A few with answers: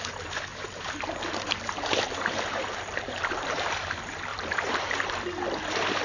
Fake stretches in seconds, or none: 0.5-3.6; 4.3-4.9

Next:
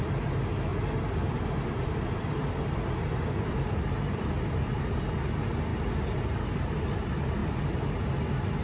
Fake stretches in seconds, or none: 0.7-5.0; 5.7-6.3

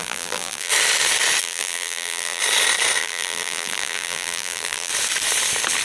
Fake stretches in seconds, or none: 0.0-0.7; 1.4-2.4; 3.0-4.9